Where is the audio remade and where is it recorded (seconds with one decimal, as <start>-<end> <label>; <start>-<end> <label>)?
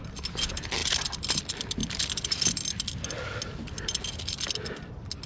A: 0.0-0.8 recorded; 0.8-1.4 remade; 1.4-1.8 recorded; 1.8-2.6 remade; 2.6-5.3 recorded